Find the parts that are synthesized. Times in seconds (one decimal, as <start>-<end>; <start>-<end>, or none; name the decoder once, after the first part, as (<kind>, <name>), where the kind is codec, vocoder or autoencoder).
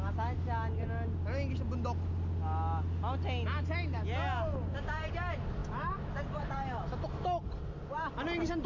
none